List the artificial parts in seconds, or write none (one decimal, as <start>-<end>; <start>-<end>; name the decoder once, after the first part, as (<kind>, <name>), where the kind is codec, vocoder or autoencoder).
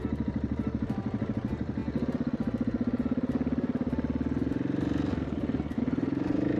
0.0-1.8 (vocoder, BigVGAN v2); 5.8-6.6